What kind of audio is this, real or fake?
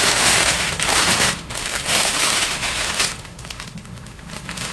fake